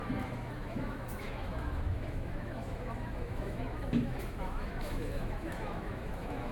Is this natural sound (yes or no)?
no